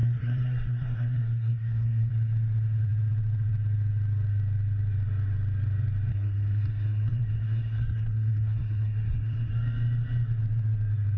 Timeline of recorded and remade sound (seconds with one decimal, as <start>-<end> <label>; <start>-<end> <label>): 0.0-2.1 remade; 2.1-6.1 recorded; 6.1-9.5 remade; 9.5-11.2 recorded